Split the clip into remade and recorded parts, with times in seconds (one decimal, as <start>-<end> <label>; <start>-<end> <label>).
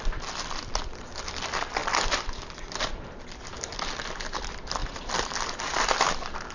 0.0-1.8 recorded; 1.8-3.2 remade; 3.2-4.8 recorded; 4.8-6.1 remade; 6.1-6.5 recorded